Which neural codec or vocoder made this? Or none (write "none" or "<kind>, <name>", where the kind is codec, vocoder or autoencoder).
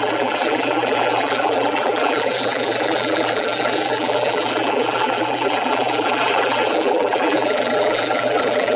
vocoder, BigVGAN v2